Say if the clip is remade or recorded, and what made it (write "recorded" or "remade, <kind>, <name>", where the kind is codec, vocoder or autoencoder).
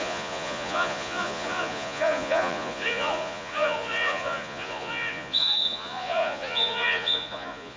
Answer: remade, vocoder, Vocos